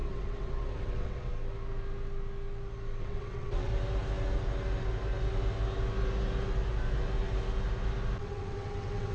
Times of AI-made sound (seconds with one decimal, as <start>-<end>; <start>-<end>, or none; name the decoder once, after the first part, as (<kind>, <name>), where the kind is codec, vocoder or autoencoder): 0.0-1.3 (vocoder, WaveNeXt); 3.0-3.7; 8.2-9.1